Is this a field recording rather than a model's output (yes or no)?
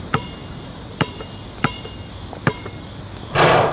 yes